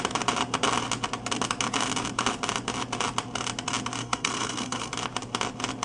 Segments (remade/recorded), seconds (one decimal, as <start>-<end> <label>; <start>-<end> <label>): 0.0-4.0 recorded; 4.0-4.9 remade; 4.9-5.8 recorded